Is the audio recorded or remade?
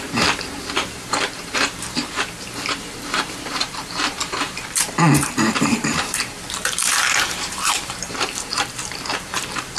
remade